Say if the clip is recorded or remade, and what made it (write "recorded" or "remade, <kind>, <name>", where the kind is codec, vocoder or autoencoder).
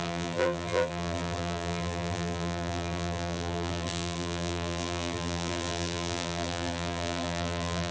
remade, vocoder, BigVGAN v2